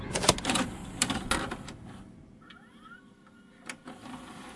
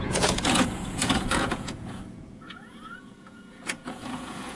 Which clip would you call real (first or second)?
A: first